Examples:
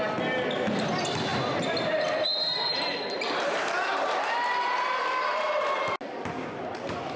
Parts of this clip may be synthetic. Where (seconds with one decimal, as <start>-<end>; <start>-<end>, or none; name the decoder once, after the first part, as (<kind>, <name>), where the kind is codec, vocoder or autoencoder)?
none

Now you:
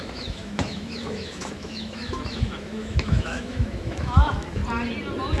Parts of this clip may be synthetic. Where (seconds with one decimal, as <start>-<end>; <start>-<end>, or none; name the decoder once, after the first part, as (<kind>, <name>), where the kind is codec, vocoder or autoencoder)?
0.0-4.6 (autoencoder, DAC-VAE)

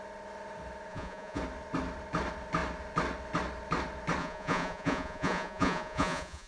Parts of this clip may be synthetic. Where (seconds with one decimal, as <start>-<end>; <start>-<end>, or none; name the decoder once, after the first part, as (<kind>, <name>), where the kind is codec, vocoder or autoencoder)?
0.9-1.4 (vocoder, Vocos); 4.2-6.5